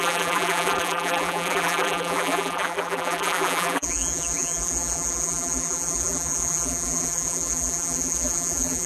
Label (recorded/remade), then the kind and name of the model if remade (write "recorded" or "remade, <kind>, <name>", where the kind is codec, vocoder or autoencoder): remade, vocoder, BigVGAN v2